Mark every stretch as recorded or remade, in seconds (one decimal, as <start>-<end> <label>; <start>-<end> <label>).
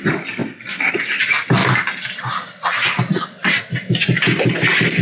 0.0-5.0 recorded